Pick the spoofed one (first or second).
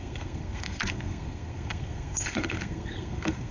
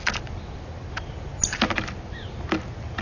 first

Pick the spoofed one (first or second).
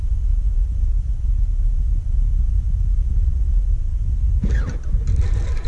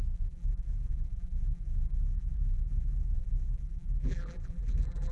second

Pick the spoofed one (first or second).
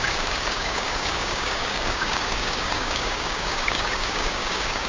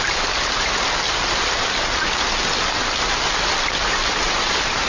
first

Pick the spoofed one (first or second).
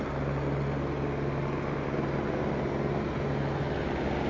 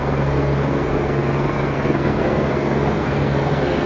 second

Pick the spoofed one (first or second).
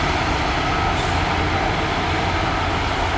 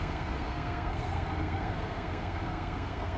second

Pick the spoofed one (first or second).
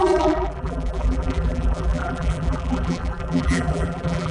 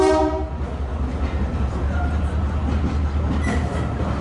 first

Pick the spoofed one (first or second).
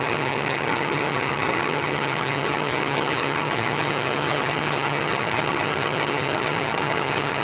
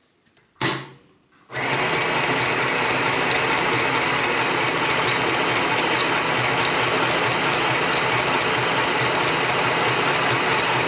first